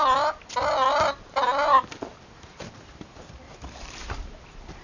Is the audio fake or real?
real